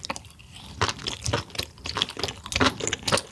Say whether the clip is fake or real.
real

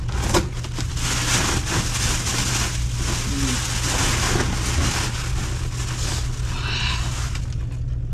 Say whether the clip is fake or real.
real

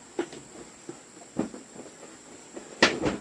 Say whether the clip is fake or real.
real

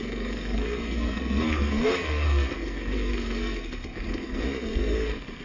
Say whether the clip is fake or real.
fake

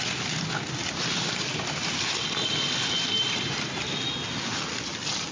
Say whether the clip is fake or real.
real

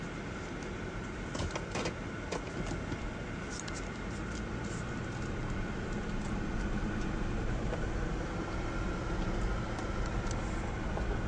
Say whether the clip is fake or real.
real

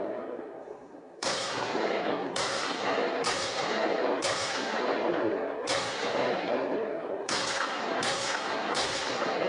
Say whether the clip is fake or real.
fake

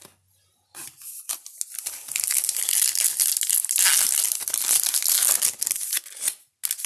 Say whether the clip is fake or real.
real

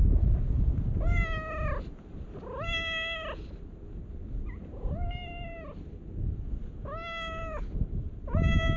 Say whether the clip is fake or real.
real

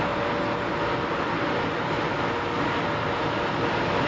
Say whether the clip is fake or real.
real